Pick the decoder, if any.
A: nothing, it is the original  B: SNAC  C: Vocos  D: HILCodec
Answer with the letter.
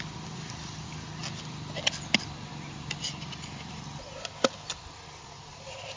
A